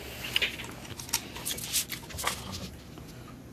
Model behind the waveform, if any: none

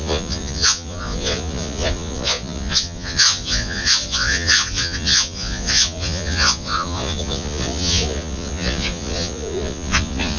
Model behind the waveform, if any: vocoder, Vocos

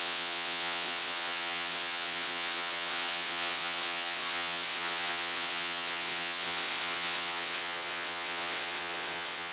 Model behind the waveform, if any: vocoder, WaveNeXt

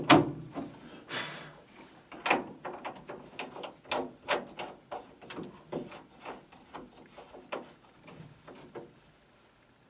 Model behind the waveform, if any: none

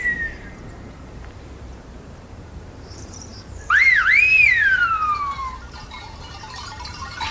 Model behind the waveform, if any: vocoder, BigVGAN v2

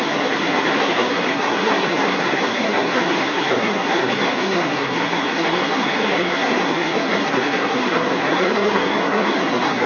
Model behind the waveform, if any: codec, SNAC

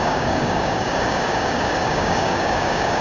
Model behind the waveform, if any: codec, DAC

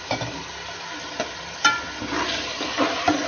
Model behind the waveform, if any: vocoder, BigVGAN v2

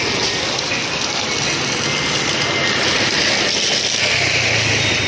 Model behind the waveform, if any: none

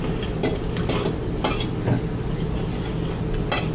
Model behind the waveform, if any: none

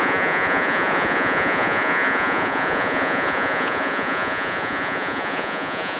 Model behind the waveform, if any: vocoder, Vocos